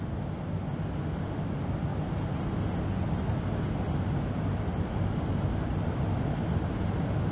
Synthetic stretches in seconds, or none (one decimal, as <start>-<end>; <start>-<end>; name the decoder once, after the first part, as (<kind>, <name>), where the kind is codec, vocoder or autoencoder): none